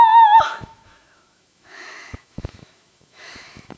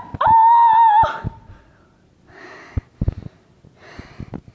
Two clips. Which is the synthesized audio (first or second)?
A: first